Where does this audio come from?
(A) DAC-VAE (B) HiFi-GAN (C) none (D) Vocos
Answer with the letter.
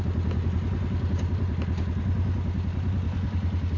C